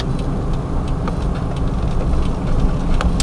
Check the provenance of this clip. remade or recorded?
recorded